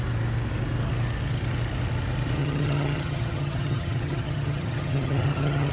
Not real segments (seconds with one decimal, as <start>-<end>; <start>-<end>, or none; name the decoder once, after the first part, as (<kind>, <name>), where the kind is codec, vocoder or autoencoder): 2.4-5.7 (vocoder, HiFi-GAN)